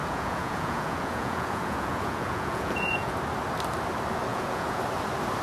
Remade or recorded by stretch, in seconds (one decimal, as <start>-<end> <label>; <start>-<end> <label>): 0.0-3.2 remade; 3.2-4.3 recorded; 4.3-4.8 remade; 4.8-5.4 recorded